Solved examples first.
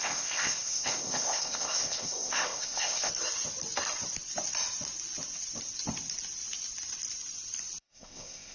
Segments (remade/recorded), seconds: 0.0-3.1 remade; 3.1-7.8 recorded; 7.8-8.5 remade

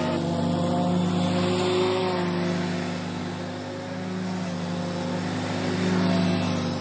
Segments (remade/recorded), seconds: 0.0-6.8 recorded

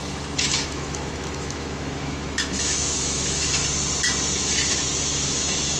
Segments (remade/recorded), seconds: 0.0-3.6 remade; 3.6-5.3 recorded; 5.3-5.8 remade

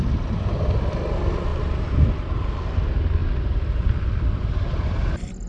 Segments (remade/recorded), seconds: 0.0-1.5 remade; 1.5-2.3 recorded; 2.3-3.2 remade; 3.2-3.7 recorded; 3.7-5.5 remade

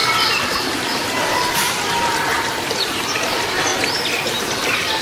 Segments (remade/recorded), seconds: 0.0-3.7 recorded; 3.7-4.4 remade; 4.4-5.0 recorded

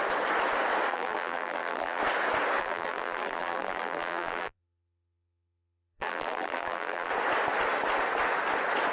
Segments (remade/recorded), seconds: 0.0-0.9 recorded; 0.9-2.0 remade; 2.0-2.6 recorded; 2.6-7.1 remade; 7.1-8.9 recorded

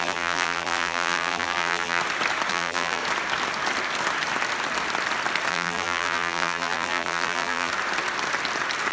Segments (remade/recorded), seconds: 0.0-2.0 remade; 2.0-2.5 recorded; 2.5-3.0 remade; 3.0-5.5 recorded; 5.5-7.7 remade; 7.7-8.9 recorded

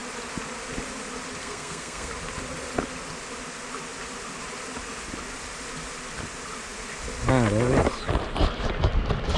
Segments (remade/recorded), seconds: 0.0-1.4 recorded; 1.4-2.1 remade; 2.1-9.4 recorded